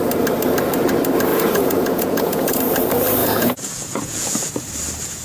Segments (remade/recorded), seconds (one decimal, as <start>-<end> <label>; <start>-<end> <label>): 0.0-1.3 recorded; 1.3-2.6 remade; 2.6-3.2 recorded; 3.2-4.5 remade; 4.5-5.2 recorded